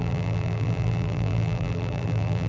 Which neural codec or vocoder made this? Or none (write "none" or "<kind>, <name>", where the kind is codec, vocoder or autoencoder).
vocoder, BigVGAN v2